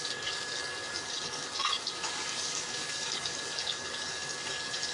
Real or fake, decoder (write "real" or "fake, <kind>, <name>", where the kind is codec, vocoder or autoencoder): fake, codec, DAC